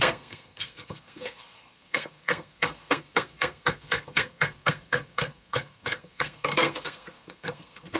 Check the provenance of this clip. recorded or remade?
remade